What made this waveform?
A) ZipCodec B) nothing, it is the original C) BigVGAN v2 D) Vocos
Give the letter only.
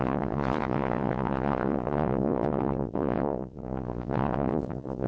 D